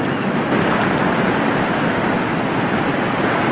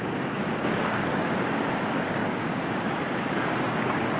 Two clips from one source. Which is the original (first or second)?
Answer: first